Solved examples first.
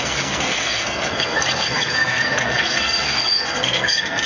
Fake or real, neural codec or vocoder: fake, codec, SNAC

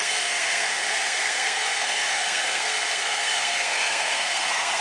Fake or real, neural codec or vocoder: fake, codec, SNAC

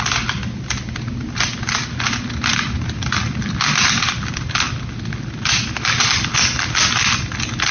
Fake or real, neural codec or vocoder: real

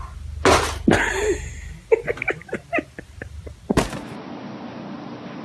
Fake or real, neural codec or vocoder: real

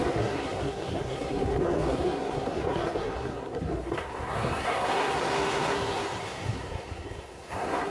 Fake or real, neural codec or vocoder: fake, codec, SNAC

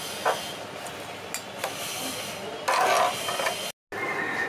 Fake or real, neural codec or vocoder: real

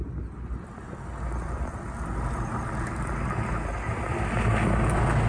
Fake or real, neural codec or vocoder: real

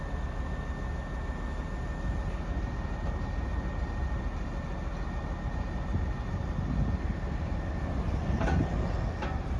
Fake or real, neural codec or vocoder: real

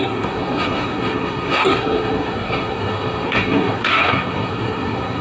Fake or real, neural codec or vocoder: fake, codec, SNAC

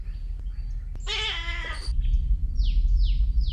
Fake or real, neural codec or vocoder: real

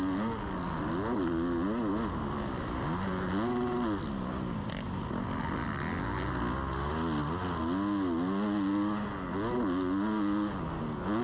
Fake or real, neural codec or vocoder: real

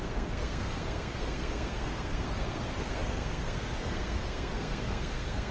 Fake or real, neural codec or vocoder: fake, codec, SNAC